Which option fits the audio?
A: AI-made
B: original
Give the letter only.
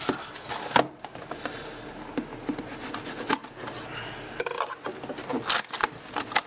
B